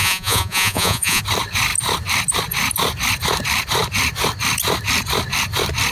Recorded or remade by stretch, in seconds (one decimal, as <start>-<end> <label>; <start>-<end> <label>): 0.0-1.2 remade; 1.2-5.9 recorded